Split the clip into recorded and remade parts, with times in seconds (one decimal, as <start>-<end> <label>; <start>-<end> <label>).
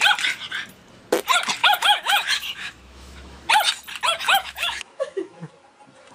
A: 0.0-1.6 recorded; 1.6-3.5 remade; 3.5-4.1 recorded; 4.1-5.5 remade; 5.5-6.1 recorded